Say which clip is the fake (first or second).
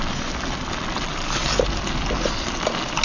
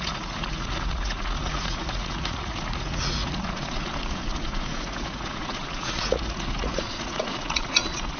second